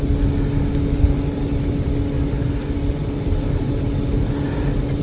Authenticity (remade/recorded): recorded